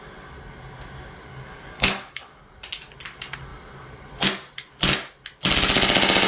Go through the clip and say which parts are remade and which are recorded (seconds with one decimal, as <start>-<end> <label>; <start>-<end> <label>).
0.0-1.3 recorded; 1.3-2.4 remade; 2.4-6.3 recorded